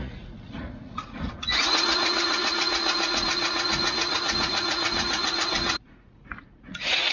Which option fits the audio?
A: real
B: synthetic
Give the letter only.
B